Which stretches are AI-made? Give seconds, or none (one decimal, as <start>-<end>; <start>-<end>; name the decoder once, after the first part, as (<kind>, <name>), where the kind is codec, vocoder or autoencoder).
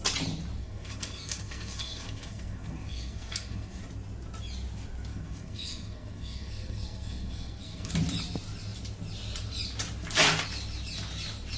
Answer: 0.6-3.8 (codec, SNAC); 5.1-7.9